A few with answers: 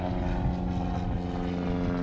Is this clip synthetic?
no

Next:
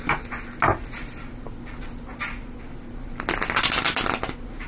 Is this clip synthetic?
no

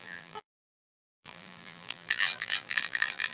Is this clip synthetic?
yes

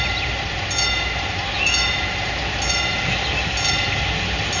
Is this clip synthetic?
no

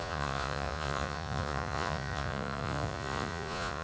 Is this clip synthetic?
yes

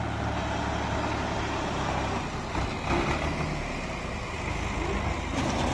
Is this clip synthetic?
no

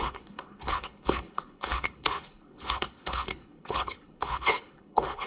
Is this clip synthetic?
yes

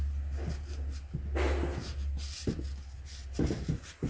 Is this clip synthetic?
no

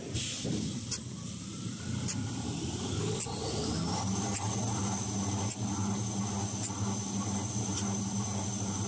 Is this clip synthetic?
no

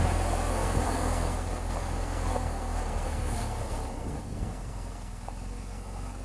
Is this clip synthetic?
yes